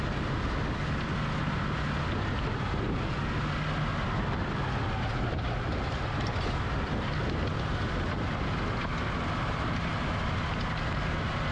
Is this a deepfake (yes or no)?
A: no